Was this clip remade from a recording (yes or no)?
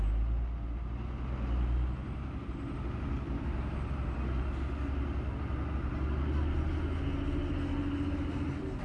no